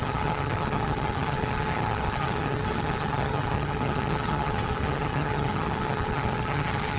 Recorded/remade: remade